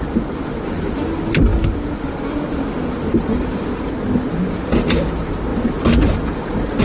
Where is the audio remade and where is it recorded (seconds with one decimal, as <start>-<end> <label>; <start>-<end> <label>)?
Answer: 0.0-6.8 recorded